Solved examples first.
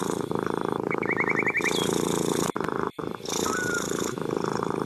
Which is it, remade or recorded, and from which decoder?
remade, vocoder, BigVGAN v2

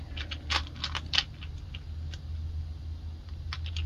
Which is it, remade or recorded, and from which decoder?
recorded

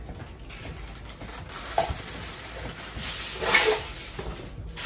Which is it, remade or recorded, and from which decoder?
recorded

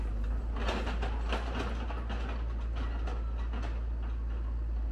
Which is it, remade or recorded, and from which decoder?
recorded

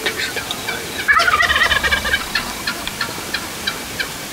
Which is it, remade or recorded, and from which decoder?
remade, vocoder, BigVGAN v2